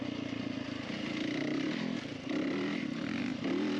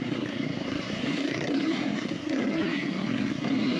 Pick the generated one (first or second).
second